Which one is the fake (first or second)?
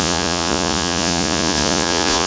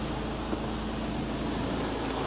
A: first